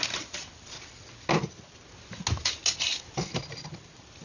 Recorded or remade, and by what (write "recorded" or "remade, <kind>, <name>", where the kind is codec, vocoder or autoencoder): recorded